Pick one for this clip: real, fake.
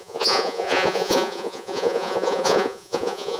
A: fake